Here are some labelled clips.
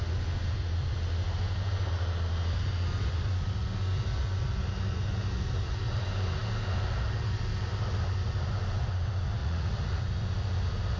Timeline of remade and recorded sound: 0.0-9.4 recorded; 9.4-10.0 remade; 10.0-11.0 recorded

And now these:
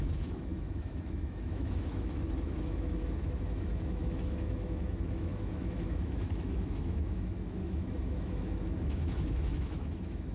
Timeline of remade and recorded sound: 0.0-10.3 remade

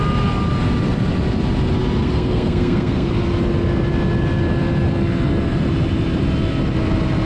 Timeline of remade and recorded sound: 0.0-2.0 recorded; 2.0-3.1 remade; 3.1-7.3 recorded

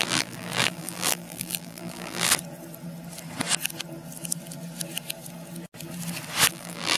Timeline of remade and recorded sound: 0.0-2.3 remade; 2.3-6.5 recorded; 6.5-7.0 remade

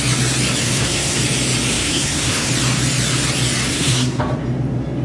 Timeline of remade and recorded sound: 0.0-0.6 recorded; 0.6-1.2 remade; 1.2-1.7 recorded; 1.7-2.5 remade; 2.5-3.7 recorded; 3.7-4.2 remade; 4.2-5.0 recorded